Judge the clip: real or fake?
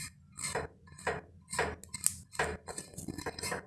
real